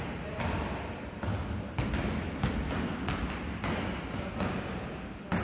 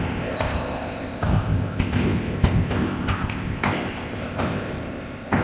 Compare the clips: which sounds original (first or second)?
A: first